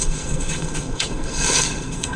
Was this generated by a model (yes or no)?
yes